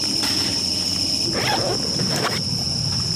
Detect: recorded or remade recorded